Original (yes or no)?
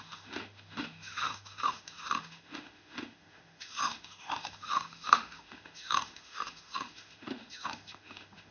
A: no